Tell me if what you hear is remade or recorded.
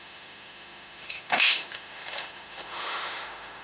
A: remade